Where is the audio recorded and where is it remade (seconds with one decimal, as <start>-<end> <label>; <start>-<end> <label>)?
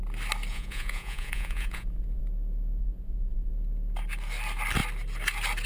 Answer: 0.0-0.5 recorded; 0.5-2.2 remade; 2.2-2.8 recorded; 2.8-3.5 remade; 3.5-5.7 recorded